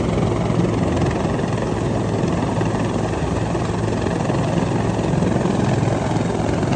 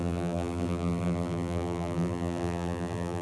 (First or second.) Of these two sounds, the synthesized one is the second